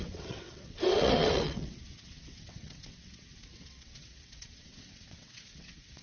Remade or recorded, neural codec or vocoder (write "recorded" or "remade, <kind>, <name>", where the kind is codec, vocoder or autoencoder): remade, vocoder, WaveNeXt